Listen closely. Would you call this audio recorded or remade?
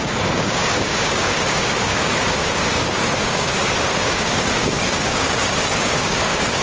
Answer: remade